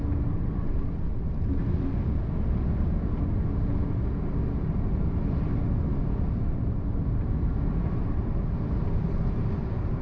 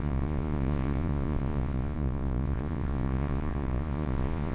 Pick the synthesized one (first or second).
second